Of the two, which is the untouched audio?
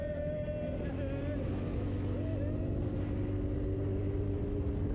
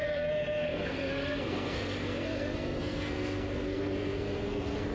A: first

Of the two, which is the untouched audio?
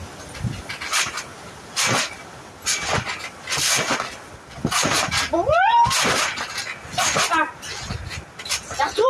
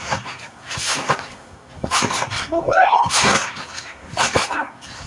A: first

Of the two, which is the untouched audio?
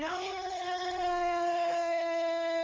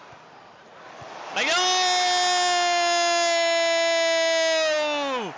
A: second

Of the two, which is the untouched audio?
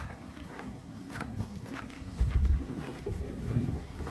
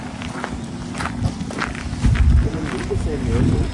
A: second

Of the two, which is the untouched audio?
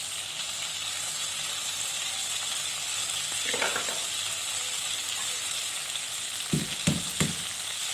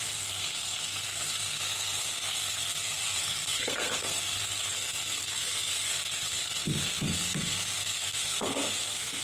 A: first